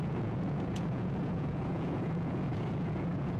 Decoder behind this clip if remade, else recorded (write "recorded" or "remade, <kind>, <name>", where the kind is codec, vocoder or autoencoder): remade, vocoder, Vocos